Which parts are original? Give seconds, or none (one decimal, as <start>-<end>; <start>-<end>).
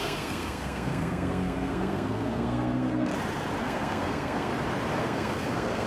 3.1-3.6; 4.5-5.0